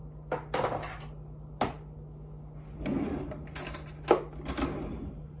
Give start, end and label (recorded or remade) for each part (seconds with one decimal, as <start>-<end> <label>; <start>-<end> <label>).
0.0-5.4 recorded